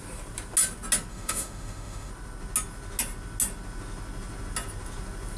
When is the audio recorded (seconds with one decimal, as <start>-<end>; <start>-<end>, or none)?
0.0-1.1; 2.1-5.4